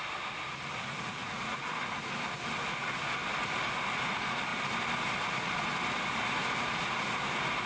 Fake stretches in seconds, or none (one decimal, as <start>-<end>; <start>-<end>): 1.2-1.8